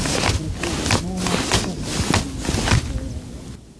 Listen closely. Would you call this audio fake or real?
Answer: real